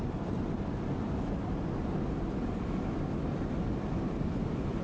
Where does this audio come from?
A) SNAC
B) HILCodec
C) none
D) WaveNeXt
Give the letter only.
C